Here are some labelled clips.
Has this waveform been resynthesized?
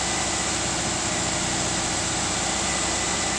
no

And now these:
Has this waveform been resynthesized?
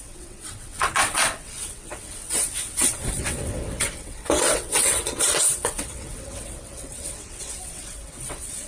yes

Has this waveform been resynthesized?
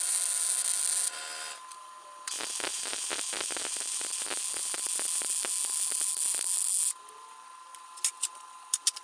no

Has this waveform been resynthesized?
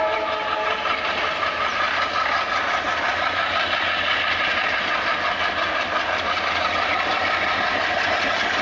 no